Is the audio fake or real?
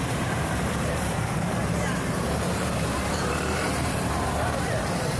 fake